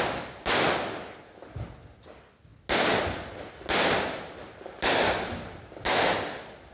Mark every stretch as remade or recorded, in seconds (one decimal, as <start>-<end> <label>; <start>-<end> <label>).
0.0-6.7 recorded